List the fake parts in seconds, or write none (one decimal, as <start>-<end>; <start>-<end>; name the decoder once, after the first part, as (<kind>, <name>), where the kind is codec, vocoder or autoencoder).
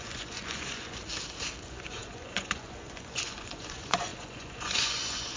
0.0-1.0 (vocoder, Vocos); 1.6-5.4